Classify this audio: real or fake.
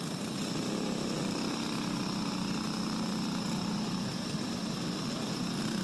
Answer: real